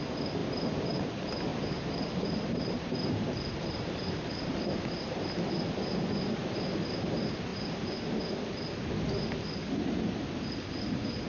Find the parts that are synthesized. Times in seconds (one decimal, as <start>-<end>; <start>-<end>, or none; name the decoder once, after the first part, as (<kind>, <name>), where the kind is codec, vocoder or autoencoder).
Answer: 1.5-5.3 (vocoder, BigVGAN v2)